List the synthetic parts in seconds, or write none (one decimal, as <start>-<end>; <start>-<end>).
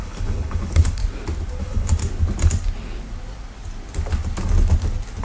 0.0-1.0; 1.6-2.0